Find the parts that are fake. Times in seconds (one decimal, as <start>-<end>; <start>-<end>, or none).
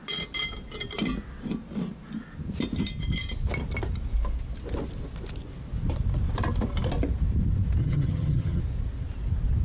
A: 7.8-8.6